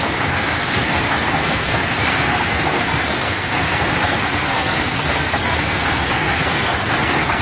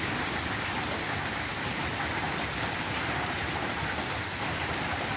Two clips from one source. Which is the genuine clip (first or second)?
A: second